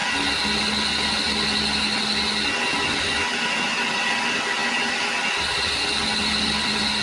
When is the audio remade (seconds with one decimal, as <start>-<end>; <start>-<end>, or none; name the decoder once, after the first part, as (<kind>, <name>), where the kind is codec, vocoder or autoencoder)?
none